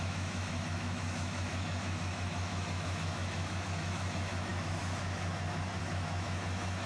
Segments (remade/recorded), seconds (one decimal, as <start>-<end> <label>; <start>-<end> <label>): 0.0-6.9 remade